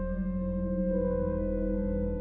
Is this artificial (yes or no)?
yes